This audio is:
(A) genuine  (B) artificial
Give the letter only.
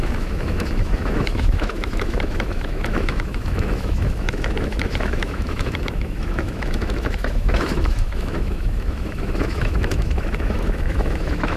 B